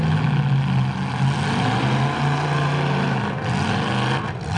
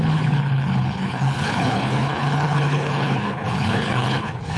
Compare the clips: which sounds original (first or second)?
first